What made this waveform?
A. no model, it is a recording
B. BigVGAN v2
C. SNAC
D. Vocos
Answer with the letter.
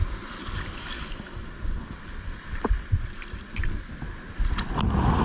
A